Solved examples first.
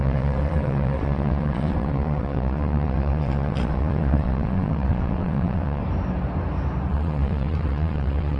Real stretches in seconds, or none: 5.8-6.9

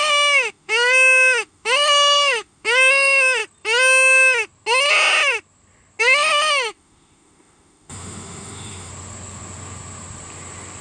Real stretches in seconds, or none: 3.4-6.0; 8.9-10.8

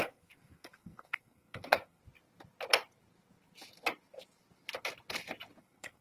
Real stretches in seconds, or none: 2.0-5.6

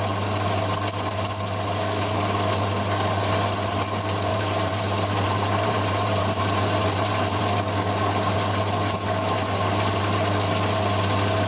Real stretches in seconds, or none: 0.0-4.3; 7.4-11.5

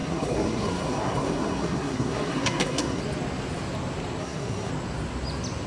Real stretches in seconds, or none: 3.0-4.2; 4.7-5.7